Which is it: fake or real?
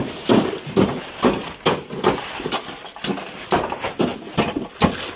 real